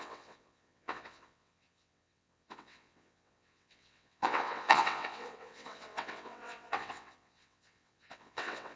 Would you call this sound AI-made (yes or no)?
yes